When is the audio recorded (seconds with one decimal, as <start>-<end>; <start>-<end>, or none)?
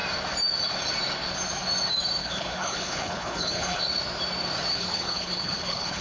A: 0.0-2.2; 3.8-4.7